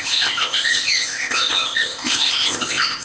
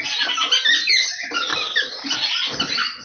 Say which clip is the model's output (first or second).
first